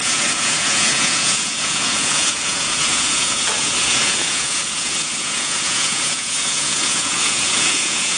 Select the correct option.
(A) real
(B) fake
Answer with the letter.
B